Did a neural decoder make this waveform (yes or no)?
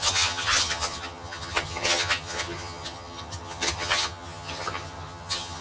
yes